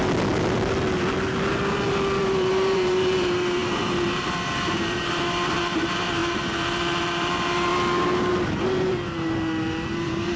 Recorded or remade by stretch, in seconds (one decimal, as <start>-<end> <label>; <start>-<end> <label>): 0.0-2.2 recorded; 2.2-10.4 remade